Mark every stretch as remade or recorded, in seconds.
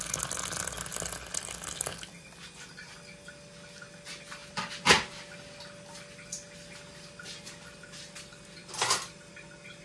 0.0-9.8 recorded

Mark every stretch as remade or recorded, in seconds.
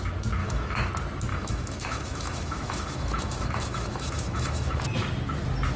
0.0-0.4 recorded; 0.4-0.9 remade; 0.9-1.3 recorded; 1.3-4.8 remade; 4.8-5.8 recorded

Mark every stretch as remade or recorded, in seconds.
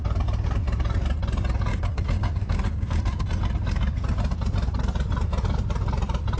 0.0-1.7 recorded; 1.7-3.3 remade; 3.3-6.4 recorded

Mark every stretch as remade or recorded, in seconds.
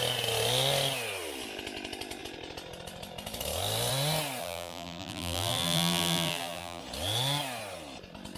0.0-4.4 recorded; 4.4-6.8 remade; 6.8-8.4 recorded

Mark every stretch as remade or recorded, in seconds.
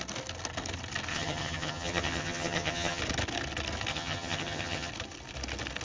0.0-1.1 recorded; 1.1-3.0 remade; 3.0-3.9 recorded; 3.9-4.9 remade; 4.9-5.8 recorded